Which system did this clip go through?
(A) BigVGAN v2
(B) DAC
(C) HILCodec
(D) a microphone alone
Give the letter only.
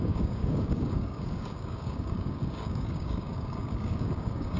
B